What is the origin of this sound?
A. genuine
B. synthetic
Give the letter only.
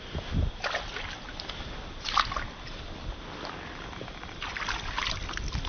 B